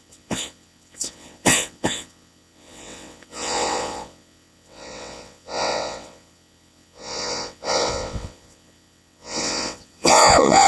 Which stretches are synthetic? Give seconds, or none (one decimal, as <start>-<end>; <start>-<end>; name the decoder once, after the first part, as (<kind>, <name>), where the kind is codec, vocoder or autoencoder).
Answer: 0.0-10.7 (vocoder, WaveNeXt)